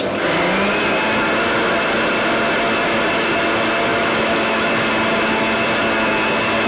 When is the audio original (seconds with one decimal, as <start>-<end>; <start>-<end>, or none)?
0.0-3.9; 4.7-6.7